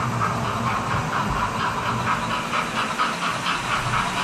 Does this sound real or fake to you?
real